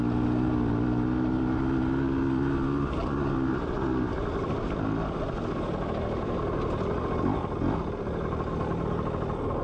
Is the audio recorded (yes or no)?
yes